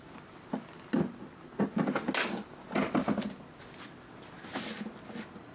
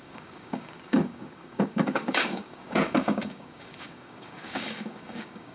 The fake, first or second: second